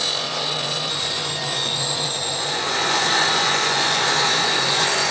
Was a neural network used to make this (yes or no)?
yes